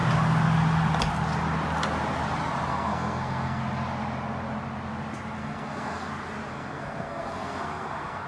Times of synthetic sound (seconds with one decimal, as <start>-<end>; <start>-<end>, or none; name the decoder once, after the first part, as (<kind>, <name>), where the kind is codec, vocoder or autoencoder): 2.7-3.6 (codec, SNAC); 5.4-6.1; 6.5-8.3